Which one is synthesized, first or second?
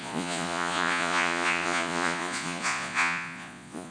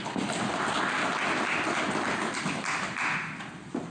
first